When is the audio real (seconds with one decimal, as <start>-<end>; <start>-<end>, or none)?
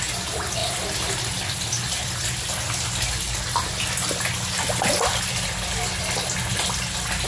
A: 0.0-7.3